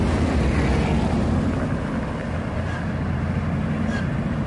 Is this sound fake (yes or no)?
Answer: no